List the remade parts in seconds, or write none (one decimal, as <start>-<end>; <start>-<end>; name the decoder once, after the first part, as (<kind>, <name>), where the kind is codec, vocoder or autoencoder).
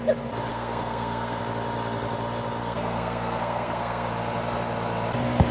0.5-1.4 (codec, SNAC); 2.6-4.1